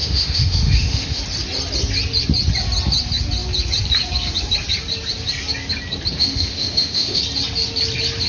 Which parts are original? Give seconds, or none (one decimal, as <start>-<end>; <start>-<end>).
1.2-6.2; 7.2-8.3